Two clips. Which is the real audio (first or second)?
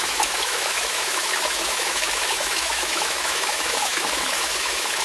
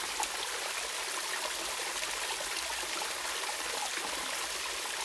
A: second